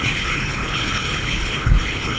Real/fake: fake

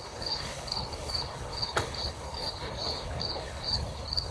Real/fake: fake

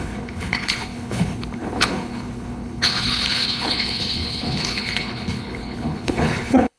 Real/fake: fake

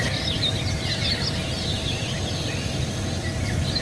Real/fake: real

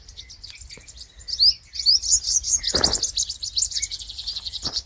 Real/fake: real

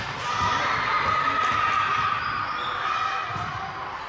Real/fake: real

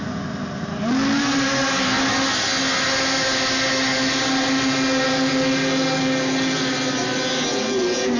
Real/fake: real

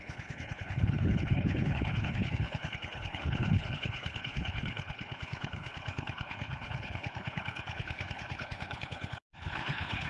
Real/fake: fake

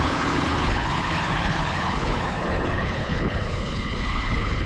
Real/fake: fake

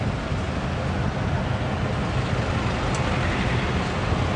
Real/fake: real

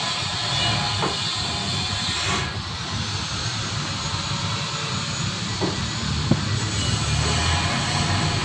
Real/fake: real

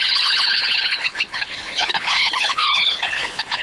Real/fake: fake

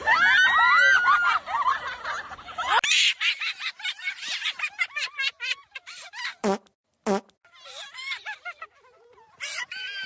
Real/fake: real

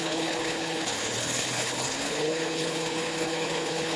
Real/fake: fake